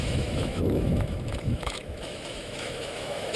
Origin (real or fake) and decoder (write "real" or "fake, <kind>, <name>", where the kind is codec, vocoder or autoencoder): fake, autoencoder, DAC-VAE